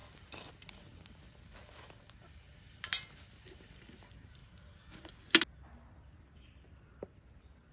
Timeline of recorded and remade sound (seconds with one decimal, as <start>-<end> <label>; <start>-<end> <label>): 0.0-7.7 recorded

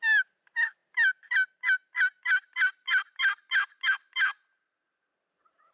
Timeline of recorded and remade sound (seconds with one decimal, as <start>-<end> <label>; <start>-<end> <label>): 0.0-5.7 recorded

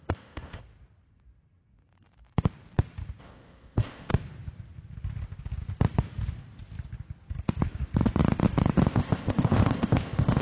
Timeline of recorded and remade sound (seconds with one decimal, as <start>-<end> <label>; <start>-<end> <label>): 0.0-0.6 remade; 0.6-3.2 recorded; 3.2-4.1 remade; 4.1-8.9 recorded; 8.9-10.4 remade

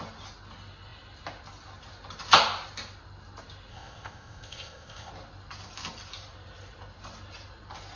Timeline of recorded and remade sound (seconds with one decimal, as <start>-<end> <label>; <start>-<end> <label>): 0.0-3.7 recorded; 3.7-5.1 remade; 5.1-8.0 recorded

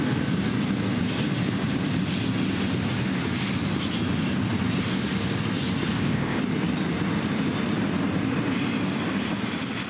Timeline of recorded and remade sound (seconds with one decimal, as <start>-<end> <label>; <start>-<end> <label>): 0.0-5.9 recorded; 5.9-6.4 remade; 6.4-9.9 recorded